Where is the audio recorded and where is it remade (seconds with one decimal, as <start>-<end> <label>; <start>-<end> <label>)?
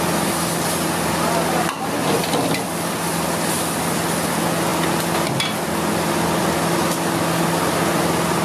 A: 0.0-8.4 recorded